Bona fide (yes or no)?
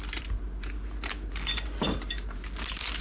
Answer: no